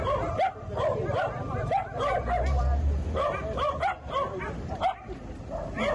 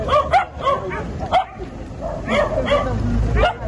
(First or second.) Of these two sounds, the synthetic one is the first